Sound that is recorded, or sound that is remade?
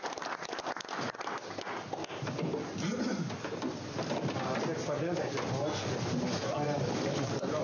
recorded